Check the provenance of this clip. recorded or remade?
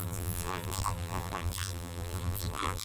remade